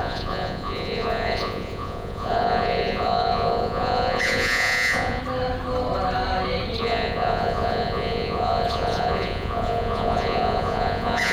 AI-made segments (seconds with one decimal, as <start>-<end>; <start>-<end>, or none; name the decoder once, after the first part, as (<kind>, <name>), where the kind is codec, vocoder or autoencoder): 0.0-5.2 (vocoder, Vocos); 6.8-11.3